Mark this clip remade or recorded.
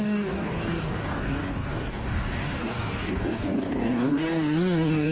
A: remade